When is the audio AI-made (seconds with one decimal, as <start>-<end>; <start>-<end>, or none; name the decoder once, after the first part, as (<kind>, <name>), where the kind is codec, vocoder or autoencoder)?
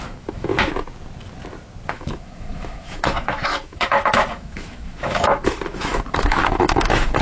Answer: 0.0-0.5 (autoencoder, DAC-VAE); 1.9-7.2